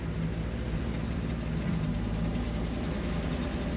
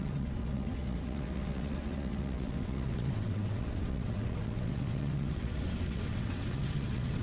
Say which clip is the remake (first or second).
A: second